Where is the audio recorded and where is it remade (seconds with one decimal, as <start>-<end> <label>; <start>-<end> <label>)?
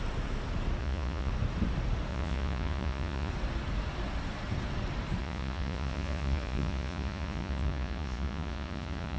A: 0.0-0.8 recorded; 0.8-1.3 remade; 1.3-2.1 recorded; 2.1-3.3 remade; 3.3-5.2 recorded; 5.2-9.2 remade